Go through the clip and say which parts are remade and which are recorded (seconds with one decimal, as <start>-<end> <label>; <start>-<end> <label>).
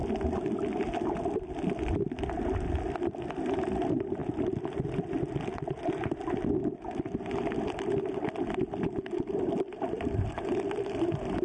0.0-3.0 recorded; 3.0-11.4 remade